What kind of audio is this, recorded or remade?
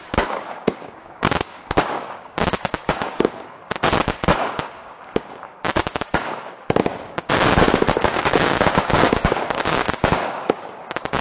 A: remade